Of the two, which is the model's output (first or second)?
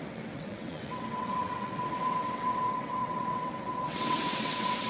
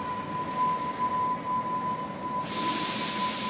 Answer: first